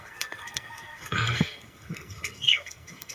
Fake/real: fake